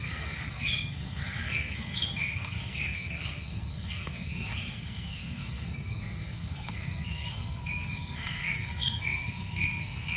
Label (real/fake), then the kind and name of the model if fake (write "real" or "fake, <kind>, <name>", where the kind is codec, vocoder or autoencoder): fake, codec, SNAC